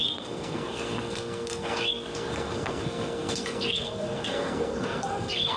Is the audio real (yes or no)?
no